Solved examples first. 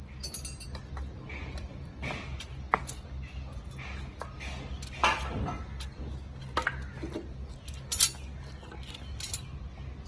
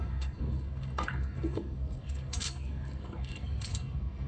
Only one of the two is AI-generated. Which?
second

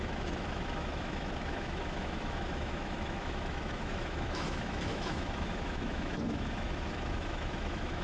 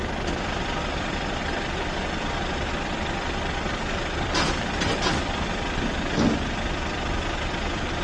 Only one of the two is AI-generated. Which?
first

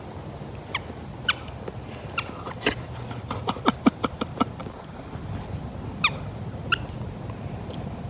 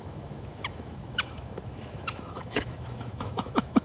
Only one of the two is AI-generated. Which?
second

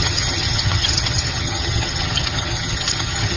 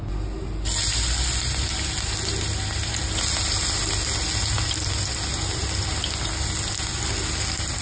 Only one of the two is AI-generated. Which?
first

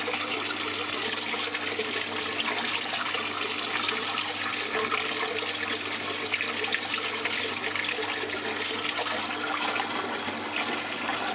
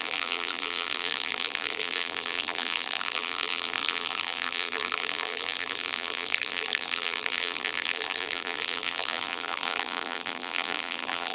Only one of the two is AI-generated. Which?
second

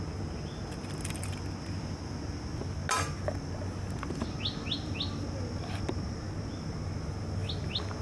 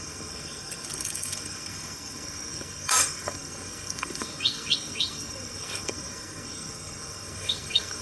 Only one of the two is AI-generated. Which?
second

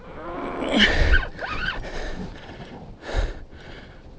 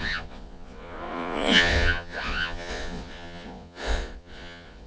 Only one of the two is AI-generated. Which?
second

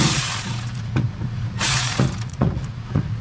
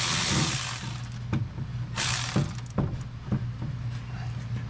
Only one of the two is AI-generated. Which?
first